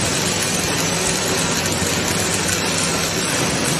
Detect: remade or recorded recorded